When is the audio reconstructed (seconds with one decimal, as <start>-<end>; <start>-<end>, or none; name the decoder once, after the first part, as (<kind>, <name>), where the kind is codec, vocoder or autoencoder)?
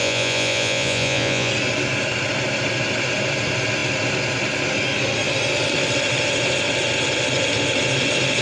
0.0-1.5 (vocoder, Vocos)